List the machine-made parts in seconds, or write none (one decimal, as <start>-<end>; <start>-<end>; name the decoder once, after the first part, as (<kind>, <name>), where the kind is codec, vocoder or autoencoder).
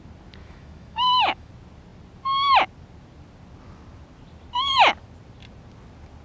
0.4-1.5 (autoencoder, DAC-VAE)